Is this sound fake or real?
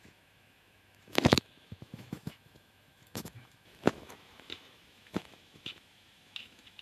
fake